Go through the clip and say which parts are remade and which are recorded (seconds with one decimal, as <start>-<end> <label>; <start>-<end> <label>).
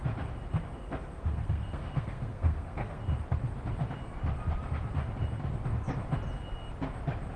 0.0-0.8 recorded; 0.8-3.0 remade; 3.0-7.4 recorded